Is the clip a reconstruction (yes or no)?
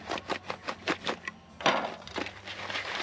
no